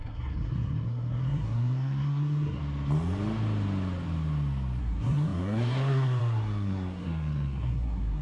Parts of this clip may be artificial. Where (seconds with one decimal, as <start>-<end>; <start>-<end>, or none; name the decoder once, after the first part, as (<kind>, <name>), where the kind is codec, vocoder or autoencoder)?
0.0-2.6 (codec, SNAC); 4.8-8.2